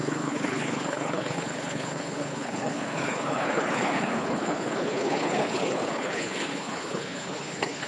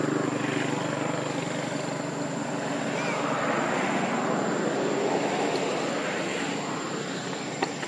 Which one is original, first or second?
second